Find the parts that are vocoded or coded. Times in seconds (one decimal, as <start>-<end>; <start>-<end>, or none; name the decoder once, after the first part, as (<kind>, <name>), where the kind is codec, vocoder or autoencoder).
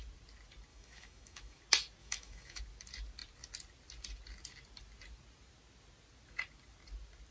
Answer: 0.7-1.6 (autoencoder, DAC-VAE); 2.0-2.6